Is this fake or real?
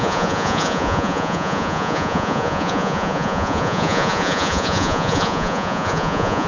fake